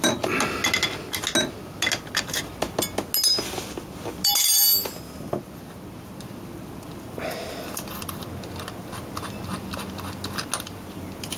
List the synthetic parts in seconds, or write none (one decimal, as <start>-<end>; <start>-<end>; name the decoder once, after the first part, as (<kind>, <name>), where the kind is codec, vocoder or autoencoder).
none